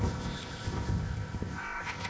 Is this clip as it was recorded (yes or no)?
no